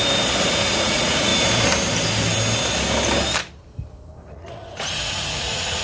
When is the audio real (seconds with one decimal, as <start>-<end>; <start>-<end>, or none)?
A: 0.0-0.7; 1.3-4.3